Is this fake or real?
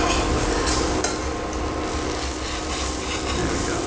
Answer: real